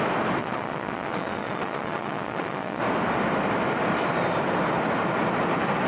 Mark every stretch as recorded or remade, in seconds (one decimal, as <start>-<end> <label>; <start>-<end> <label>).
0.0-0.4 recorded; 0.4-2.8 remade; 2.8-5.9 recorded